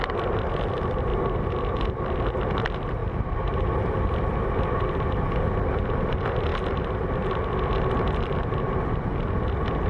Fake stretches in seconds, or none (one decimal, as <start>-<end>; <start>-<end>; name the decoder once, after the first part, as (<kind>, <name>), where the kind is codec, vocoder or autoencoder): none